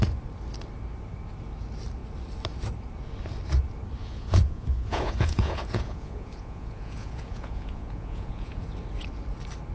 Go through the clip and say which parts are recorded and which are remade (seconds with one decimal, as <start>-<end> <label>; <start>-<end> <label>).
0.0-4.0 recorded; 4.0-8.7 remade; 8.7-9.7 recorded